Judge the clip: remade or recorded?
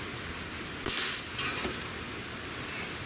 recorded